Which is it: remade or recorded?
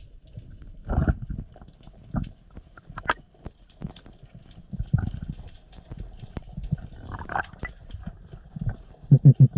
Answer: recorded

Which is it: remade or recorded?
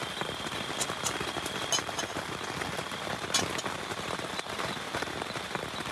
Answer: recorded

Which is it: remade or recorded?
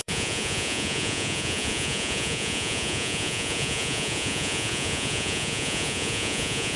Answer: remade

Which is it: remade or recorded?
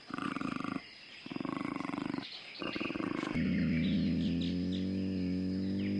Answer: recorded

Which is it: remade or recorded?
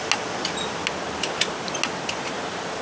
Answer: recorded